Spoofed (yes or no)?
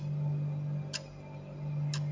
no